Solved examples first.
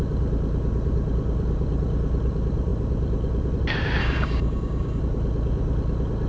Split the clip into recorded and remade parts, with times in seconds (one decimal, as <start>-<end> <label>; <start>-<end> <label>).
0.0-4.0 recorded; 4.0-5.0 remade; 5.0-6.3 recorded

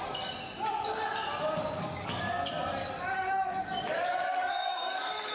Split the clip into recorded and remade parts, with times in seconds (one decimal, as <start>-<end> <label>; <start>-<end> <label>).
0.0-1.6 recorded; 1.6-2.2 remade; 2.2-2.8 recorded; 2.8-5.3 remade

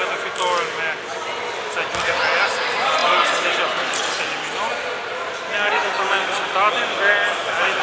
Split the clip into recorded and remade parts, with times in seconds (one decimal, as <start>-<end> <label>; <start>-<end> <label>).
0.0-7.8 recorded

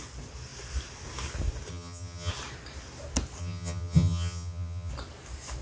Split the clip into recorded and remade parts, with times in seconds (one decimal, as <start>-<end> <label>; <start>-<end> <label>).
0.0-1.7 recorded; 1.7-2.3 remade; 2.3-3.4 recorded; 3.4-4.9 remade; 4.9-5.6 recorded

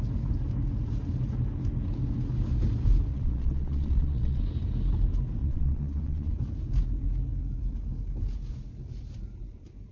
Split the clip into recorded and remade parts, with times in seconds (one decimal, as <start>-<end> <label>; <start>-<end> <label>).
0.0-3.1 recorded; 3.1-4.4 remade; 4.4-5.4 recorded; 5.4-6.3 remade; 6.3-9.9 recorded

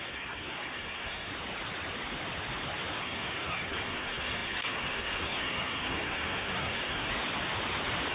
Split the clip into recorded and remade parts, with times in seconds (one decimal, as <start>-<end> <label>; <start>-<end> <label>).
0.0-1.3 remade; 1.3-3.0 recorded; 3.0-7.1 remade; 7.1-8.1 recorded